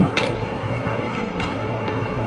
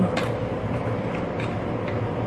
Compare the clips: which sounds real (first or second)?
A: second